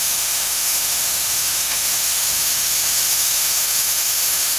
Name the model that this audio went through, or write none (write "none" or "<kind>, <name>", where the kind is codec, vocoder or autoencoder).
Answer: autoencoder, DAC-VAE